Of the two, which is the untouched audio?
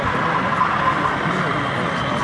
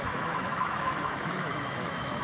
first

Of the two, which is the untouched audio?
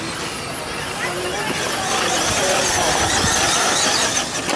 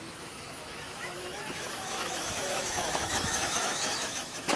first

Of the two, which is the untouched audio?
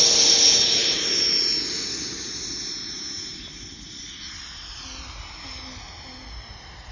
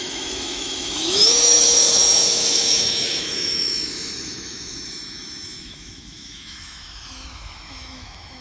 first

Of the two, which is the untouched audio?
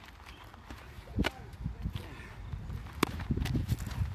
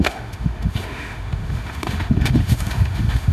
first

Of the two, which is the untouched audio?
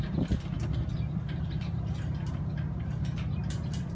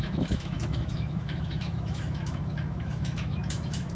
first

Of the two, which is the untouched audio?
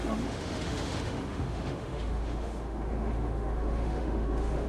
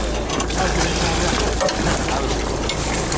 second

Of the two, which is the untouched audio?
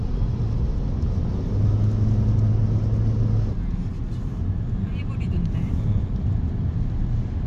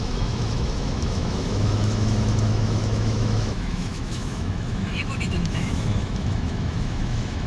first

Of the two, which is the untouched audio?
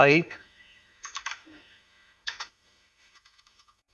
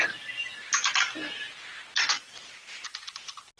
second